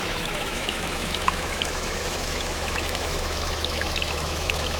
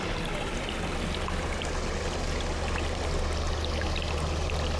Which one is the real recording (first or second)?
second